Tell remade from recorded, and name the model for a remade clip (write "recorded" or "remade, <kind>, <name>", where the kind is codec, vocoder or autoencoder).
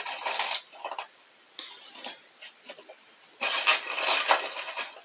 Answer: recorded